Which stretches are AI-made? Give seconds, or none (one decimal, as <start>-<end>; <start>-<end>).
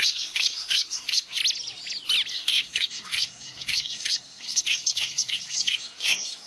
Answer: 0.0-1.4; 2.3-6.5